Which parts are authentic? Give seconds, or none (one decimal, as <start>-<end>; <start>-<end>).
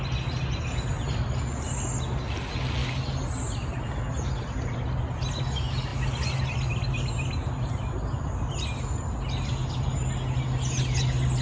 0.0-5.9; 6.7-11.4